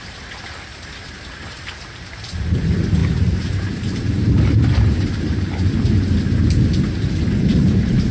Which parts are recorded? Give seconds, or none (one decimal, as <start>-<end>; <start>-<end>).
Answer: 0.0-0.7; 1.8-3.0; 5.7-7.4